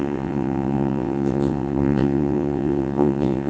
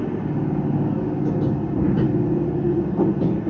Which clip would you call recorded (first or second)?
second